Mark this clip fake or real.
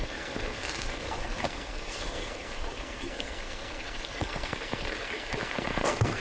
fake